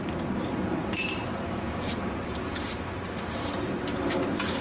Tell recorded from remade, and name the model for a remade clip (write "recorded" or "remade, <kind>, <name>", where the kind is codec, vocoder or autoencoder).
remade, vocoder, BigVGAN v2